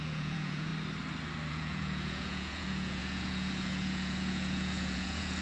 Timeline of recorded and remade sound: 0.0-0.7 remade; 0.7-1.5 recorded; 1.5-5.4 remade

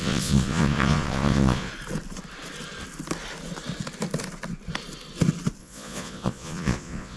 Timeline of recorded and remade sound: 0.0-1.7 remade; 1.7-5.6 recorded; 5.6-7.2 remade

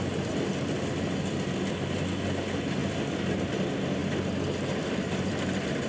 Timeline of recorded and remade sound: 0.0-5.9 recorded

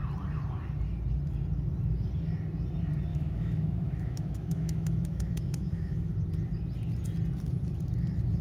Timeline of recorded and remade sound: 0.0-3.1 recorded; 3.1-6.1 remade; 6.1-8.4 recorded

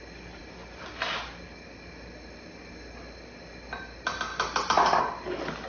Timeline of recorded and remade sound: 0.0-5.7 recorded

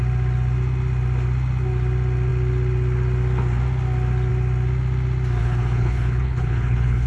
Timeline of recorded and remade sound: 0.0-5.4 recorded; 5.4-7.1 remade

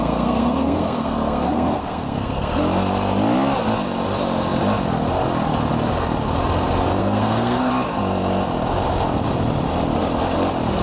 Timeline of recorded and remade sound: 0.0-2.6 remade; 2.6-7.0 recorded; 7.0-7.7 remade; 7.7-10.8 recorded